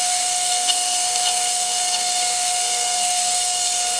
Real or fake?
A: fake